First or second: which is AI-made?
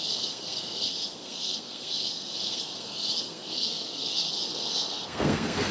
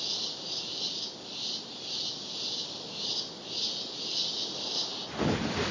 first